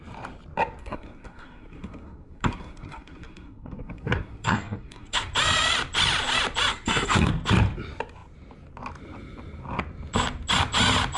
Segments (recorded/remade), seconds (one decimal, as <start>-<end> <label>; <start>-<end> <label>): 0.0-0.8 recorded; 0.8-5.3 remade; 5.3-6.7 recorded; 6.7-7.3 remade; 7.3-11.2 recorded